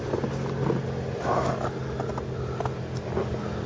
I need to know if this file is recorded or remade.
recorded